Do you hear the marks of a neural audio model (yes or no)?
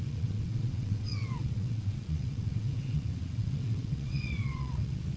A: yes